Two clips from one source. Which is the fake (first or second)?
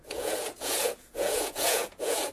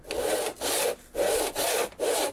first